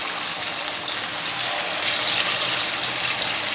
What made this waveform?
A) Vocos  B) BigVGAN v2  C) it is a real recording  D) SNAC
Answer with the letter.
C